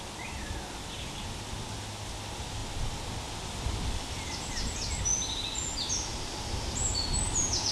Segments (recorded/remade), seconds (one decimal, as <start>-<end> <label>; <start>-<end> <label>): 0.0-7.7 recorded

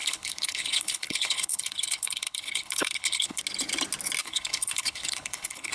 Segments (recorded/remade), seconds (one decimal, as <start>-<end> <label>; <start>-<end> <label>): 0.0-3.4 remade; 3.4-4.2 recorded; 4.2-5.7 remade

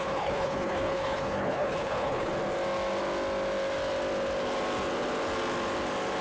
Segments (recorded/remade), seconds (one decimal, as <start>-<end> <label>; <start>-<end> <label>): 0.0-2.3 remade; 2.3-6.2 recorded

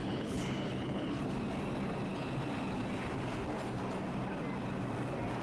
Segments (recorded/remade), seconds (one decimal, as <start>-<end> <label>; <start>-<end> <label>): 0.0-1.3 remade; 1.3-5.4 recorded

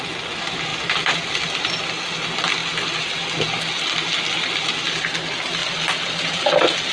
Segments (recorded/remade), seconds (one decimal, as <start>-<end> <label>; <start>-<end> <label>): 0.0-6.9 recorded

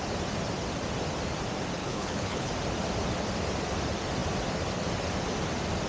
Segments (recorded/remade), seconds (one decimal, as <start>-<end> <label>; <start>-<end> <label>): 0.0-1.8 recorded; 1.8-2.5 remade; 2.5-5.9 recorded

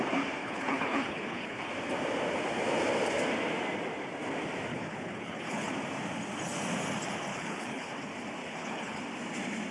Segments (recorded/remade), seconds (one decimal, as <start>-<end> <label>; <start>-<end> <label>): 0.0-0.4 recorded; 0.4-1.7 remade; 1.7-4.7 recorded; 4.7-5.7 remade; 5.7-7.3 recorded; 7.3-7.9 remade; 7.9-8.4 recorded; 8.4-9.0 remade; 9.0-9.7 recorded